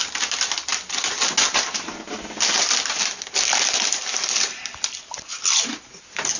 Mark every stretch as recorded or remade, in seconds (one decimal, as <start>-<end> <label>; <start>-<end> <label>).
0.0-6.4 recorded

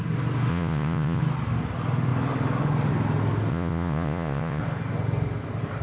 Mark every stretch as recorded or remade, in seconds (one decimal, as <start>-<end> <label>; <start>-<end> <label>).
0.0-0.5 recorded; 0.5-1.2 remade; 1.2-3.5 recorded; 3.5-4.6 remade; 4.6-5.8 recorded